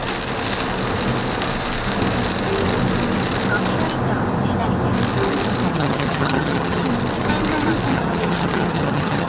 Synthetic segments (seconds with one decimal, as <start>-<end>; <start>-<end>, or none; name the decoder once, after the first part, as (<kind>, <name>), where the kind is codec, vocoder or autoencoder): 5.7-6.9 (vocoder, HiFi-GAN); 7.9-9.3